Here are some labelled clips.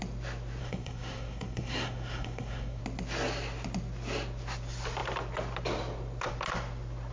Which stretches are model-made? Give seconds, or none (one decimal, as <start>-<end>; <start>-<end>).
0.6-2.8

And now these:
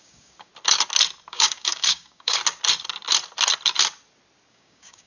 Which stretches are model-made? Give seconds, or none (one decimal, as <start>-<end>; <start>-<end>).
0.0-0.5; 1.3-2.4; 4.5-5.1

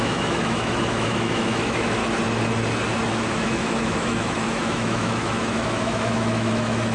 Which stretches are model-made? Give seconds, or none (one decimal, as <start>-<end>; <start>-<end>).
0.0-2.0; 3.1-6.9